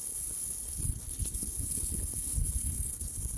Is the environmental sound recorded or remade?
remade